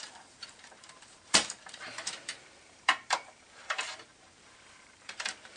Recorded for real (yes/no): no